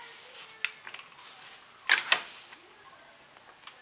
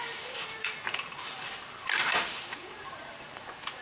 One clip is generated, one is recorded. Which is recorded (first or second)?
first